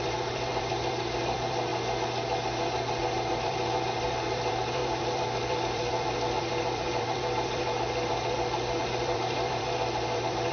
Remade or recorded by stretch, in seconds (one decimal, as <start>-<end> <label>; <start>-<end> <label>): 0.0-1.7 remade; 1.7-3.3 recorded; 3.3-10.5 remade